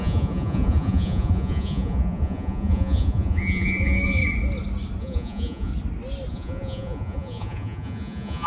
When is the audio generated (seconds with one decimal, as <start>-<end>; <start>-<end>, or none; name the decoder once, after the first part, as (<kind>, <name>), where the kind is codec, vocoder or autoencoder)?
0.0-4.2 (vocoder, Vocos); 5.0-5.7; 6.3-8.5